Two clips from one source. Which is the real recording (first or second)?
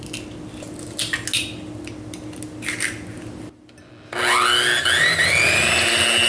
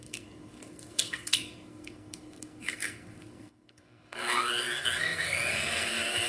first